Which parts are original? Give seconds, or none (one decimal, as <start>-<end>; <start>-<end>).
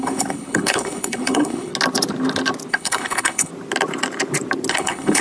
1.7-2.7; 3.5-4.7